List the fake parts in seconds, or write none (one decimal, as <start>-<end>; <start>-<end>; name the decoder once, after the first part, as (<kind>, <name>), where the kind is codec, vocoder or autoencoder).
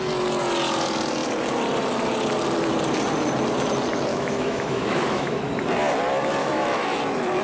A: 4.1-5.5 (autoencoder, DAC-VAE); 6.4-7.0